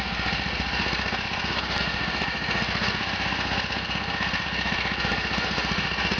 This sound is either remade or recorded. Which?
remade